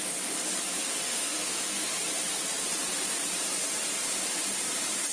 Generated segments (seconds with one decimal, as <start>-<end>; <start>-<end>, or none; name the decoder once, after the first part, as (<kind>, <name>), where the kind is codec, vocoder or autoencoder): 1.1-2.0 (autoencoder, DAC-VAE)